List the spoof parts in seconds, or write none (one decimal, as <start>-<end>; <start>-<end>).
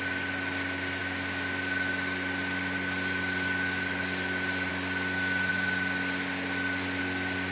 none